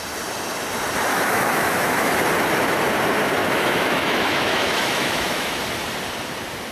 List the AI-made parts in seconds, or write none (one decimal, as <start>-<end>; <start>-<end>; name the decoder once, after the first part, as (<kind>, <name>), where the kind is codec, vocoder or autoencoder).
1.1-2.1 (autoencoder, DAC-VAE); 3.4-5.6